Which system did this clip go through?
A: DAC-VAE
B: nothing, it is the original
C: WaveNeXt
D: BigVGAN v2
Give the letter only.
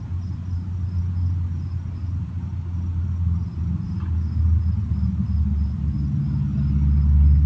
B